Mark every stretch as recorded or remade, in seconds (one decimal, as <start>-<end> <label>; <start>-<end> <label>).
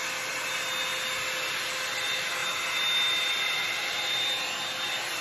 0.0-5.2 recorded